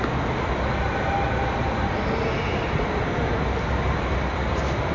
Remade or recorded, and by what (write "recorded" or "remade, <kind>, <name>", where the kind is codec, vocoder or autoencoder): recorded